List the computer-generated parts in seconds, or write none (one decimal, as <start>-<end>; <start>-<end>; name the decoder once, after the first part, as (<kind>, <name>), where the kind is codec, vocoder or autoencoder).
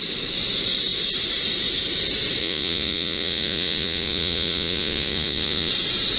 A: 2.4-5.7 (vocoder, Vocos)